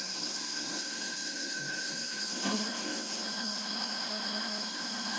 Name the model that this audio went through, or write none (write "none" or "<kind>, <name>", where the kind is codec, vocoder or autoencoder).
codec, SNAC